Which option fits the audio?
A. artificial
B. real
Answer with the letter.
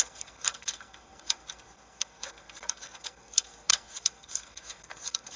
A